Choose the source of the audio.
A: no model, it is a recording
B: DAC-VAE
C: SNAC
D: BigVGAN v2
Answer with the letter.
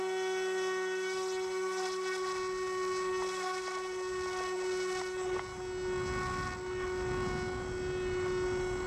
A